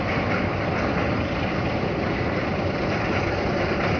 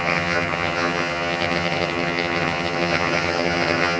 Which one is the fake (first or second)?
second